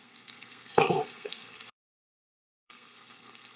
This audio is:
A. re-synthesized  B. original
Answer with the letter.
A